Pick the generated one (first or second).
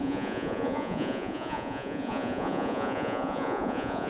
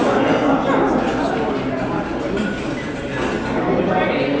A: first